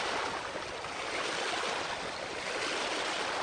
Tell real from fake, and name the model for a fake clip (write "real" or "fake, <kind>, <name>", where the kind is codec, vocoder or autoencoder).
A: real